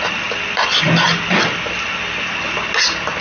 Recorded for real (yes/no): yes